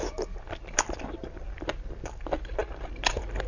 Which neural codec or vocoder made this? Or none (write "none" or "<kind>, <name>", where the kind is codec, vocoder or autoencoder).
none